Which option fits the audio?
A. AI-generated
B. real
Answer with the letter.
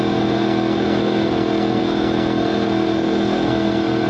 A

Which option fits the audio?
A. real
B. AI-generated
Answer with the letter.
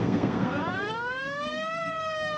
B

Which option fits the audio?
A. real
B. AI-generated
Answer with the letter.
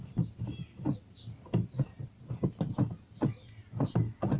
A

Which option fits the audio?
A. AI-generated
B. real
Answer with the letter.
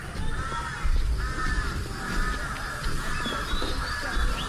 B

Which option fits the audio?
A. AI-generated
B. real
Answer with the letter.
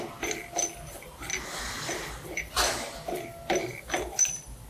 B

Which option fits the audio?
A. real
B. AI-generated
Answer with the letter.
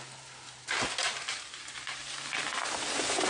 A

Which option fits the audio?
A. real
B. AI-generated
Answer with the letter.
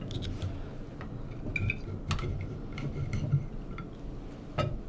A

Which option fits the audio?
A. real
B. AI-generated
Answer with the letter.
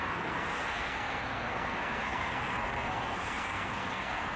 B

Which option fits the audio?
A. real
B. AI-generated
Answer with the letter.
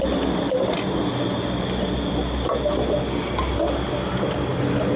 A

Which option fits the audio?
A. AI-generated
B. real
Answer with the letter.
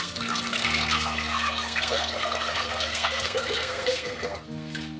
A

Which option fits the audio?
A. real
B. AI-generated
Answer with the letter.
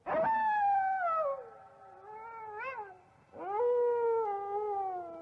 A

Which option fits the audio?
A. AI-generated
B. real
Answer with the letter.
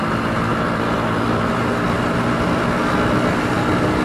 B